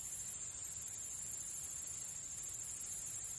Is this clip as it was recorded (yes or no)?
yes